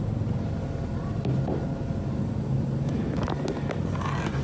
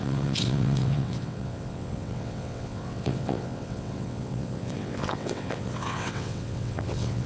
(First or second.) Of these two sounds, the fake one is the second